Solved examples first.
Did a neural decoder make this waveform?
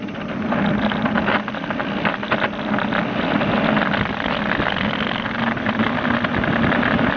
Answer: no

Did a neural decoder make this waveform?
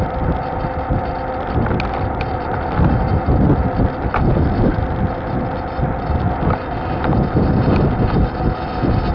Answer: no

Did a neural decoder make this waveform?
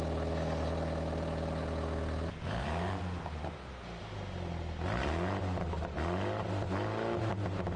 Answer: no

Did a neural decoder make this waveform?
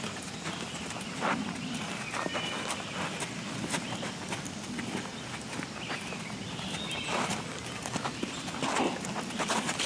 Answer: no